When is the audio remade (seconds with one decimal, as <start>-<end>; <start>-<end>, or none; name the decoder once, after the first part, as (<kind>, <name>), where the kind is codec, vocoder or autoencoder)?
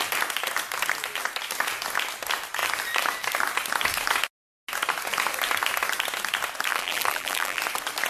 6.7-7.6 (vocoder, BigVGAN v2)